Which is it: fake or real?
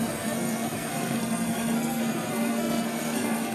fake